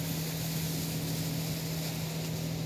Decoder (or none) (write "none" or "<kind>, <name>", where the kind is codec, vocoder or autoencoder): none